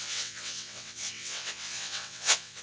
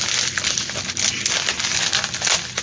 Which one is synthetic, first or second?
first